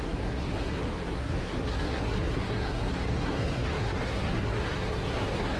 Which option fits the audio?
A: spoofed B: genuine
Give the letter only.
A